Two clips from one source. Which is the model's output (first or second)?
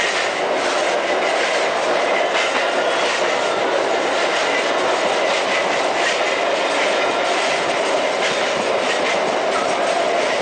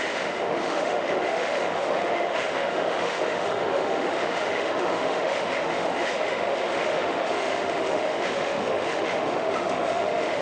second